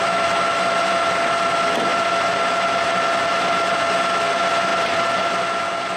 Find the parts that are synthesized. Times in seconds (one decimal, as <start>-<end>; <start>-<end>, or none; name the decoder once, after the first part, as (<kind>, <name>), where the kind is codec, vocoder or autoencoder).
1.9-3.7 (vocoder, BigVGAN v2); 4.7-5.3